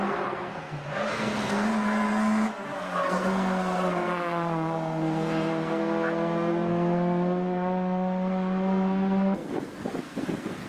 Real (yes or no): no